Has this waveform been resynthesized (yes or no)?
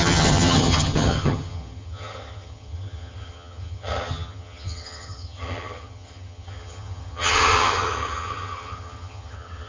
yes